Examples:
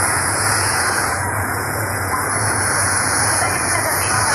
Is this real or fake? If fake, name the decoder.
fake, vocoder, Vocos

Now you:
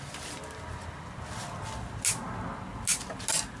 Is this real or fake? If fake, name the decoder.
real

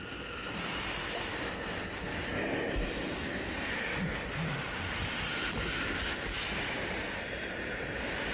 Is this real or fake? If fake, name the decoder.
real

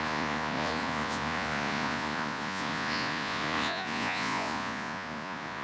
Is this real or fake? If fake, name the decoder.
fake, vocoder, Vocos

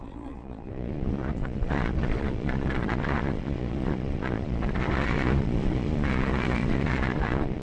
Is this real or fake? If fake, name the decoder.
fake, vocoder, Vocos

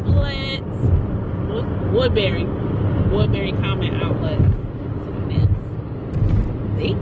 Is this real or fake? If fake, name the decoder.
real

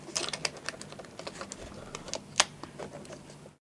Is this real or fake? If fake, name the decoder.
real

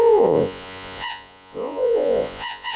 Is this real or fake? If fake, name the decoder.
fake, vocoder, Vocos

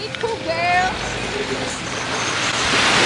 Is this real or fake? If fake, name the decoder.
real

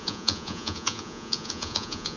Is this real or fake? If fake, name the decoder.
fake, vocoder, Vocos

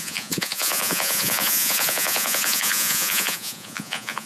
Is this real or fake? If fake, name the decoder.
fake, vocoder, Vocos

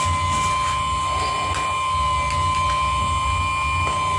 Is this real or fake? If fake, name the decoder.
real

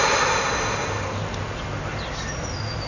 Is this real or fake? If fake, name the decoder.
real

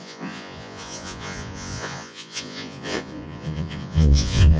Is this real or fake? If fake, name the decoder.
fake, vocoder, Vocos